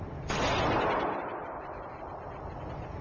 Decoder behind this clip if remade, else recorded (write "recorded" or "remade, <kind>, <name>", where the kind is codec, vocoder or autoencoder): recorded